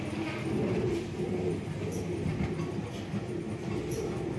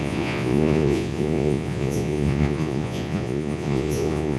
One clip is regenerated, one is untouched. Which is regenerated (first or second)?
second